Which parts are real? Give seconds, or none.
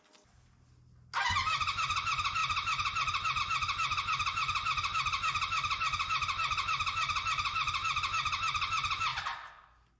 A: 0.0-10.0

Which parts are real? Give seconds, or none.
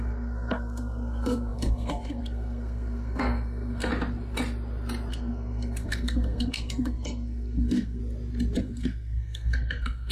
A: 3.9-5.1; 8.0-8.6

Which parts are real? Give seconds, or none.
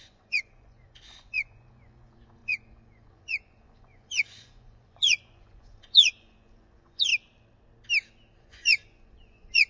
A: 7.1-8.4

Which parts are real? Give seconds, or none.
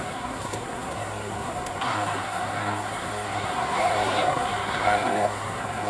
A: none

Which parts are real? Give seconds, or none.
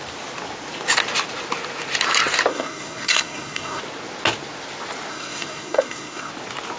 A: 0.0-2.5; 3.8-5.1; 6.3-6.8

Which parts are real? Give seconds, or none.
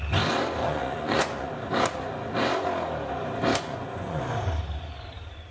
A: 0.0-0.6; 1.5-3.5; 4.2-5.5